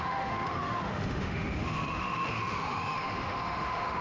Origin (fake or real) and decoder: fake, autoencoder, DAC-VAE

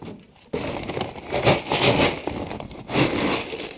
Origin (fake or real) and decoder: real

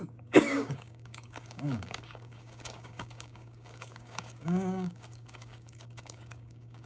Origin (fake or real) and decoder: fake, codec, DAC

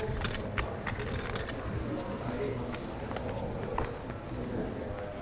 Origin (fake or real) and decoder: real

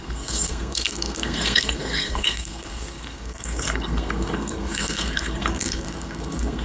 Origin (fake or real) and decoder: fake, codec, SNAC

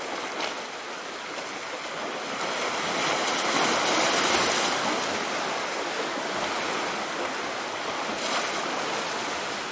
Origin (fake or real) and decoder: real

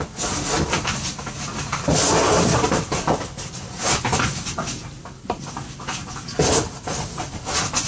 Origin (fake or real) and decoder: real